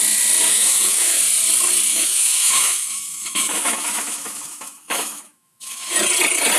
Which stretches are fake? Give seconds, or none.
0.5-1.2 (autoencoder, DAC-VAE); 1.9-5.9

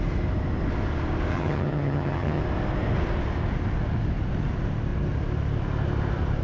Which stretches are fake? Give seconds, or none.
1.3-2.4 (vocoder, HiFi-GAN)

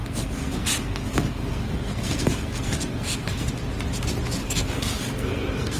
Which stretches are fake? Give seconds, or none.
0.0-3.5 (codec, SNAC); 4.4-5.8

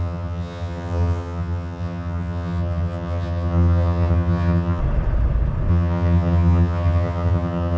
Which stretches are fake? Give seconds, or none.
0.0-4.8 (vocoder, HiFi-GAN); 5.7-7.8

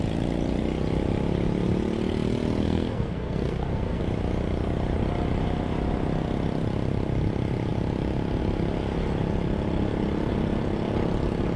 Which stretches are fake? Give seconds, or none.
2.6-4.0 (codec, SNAC)